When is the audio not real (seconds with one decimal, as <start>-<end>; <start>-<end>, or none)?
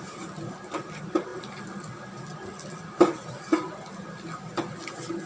none